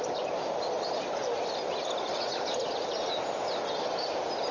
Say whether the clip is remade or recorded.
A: recorded